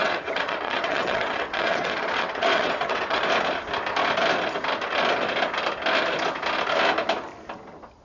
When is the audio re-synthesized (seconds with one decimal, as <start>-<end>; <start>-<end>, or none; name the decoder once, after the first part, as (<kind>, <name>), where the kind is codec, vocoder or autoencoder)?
0.0-3.2 (vocoder, WaveNeXt)